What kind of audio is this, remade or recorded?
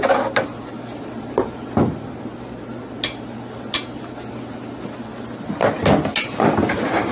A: recorded